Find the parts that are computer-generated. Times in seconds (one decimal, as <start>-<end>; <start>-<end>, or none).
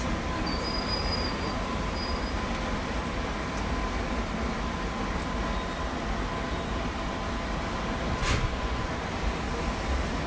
8.2-9.1